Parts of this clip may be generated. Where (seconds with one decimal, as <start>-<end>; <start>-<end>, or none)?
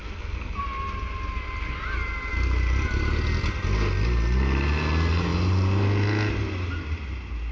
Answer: 0.0-0.6